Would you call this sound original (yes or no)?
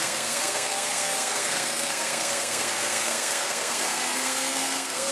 no